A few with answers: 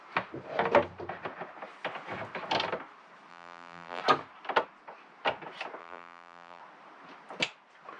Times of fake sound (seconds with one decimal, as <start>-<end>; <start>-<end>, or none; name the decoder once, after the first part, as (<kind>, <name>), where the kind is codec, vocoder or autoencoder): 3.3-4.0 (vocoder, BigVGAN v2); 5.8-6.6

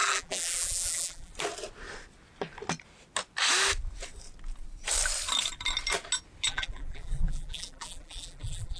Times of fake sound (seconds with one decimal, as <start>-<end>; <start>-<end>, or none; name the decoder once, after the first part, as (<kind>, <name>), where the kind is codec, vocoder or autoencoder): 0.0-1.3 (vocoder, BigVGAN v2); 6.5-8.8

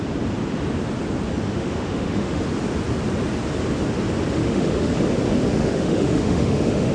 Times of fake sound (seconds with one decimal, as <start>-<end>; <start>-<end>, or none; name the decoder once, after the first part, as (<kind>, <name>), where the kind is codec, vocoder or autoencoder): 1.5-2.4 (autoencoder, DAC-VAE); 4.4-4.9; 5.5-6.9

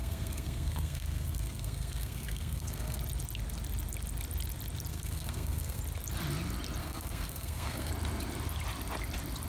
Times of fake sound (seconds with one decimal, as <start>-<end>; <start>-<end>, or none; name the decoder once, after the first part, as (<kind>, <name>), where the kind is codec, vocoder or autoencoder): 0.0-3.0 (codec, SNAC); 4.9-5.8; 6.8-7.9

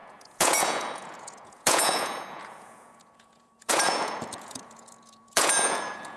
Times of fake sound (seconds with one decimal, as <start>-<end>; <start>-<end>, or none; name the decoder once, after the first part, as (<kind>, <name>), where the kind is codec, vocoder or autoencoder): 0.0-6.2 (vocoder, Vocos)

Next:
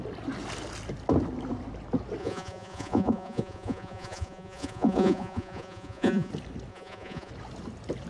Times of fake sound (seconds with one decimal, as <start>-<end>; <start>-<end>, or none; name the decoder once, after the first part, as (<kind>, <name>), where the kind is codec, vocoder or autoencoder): 2.2-6.3 (vocoder, Vocos); 6.7-7.3